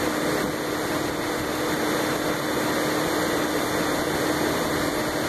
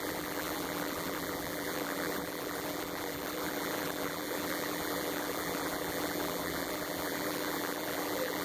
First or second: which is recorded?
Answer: first